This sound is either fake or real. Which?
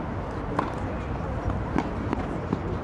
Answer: real